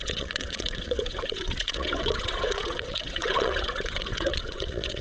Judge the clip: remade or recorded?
remade